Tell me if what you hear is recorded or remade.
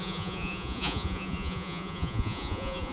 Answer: remade